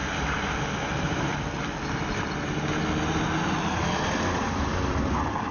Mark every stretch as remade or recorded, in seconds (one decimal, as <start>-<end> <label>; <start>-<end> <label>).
0.0-0.6 recorded; 0.6-1.3 remade; 1.3-4.6 recorded; 4.6-5.5 remade